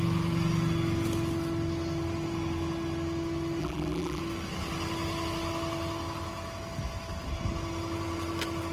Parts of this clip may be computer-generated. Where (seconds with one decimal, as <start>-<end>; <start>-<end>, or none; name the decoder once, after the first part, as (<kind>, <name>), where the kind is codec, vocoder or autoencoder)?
3.6-4.2 (vocoder, BigVGAN v2)